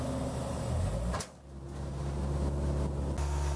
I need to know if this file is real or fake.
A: real